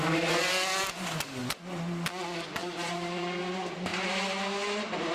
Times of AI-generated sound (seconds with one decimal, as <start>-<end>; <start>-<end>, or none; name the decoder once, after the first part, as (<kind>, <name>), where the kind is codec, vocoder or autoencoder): 2.6-3.4 (vocoder, BigVGAN v2); 3.9-5.1